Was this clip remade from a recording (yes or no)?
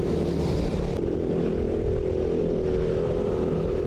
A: no